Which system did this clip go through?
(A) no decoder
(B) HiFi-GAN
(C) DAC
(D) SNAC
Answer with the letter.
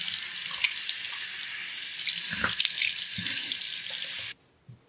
A